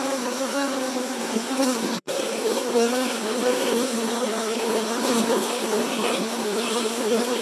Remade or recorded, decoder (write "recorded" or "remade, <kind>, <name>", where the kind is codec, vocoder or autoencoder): remade, codec, SNAC